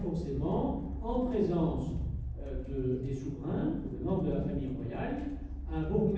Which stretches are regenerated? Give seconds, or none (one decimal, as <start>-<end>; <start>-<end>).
3.6-4.9